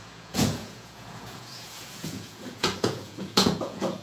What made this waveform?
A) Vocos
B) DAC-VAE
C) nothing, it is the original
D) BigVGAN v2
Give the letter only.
A